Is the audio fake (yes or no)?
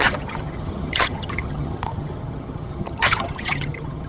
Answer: yes